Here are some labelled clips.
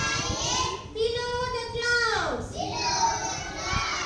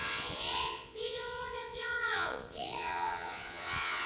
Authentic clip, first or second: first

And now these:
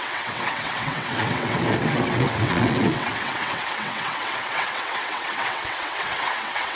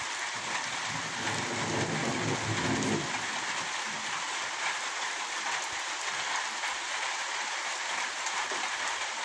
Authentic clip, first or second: second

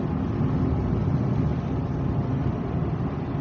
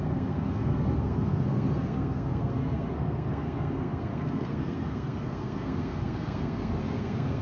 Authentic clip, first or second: first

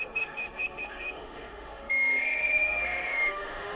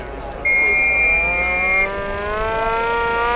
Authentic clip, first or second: second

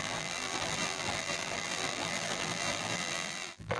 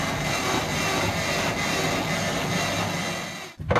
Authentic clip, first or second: second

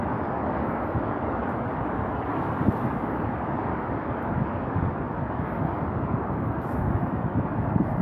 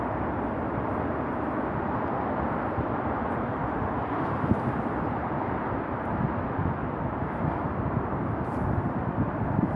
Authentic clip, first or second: second